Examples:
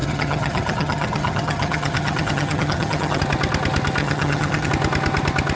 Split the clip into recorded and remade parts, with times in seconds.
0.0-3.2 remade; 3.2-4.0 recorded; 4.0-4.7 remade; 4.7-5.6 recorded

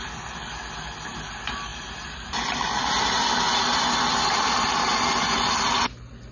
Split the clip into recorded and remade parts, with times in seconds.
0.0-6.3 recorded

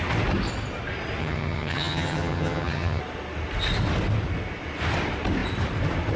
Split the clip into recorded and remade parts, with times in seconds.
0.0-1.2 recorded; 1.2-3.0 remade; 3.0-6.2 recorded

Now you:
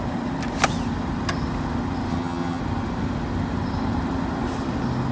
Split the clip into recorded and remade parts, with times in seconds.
0.0-2.1 recorded; 2.1-2.6 remade; 2.6-5.1 recorded

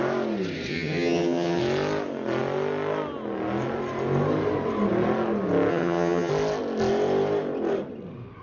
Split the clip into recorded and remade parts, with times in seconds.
0.0-0.7 recorded; 0.7-1.6 remade; 1.6-5.7 recorded; 5.7-6.3 remade; 6.3-8.4 recorded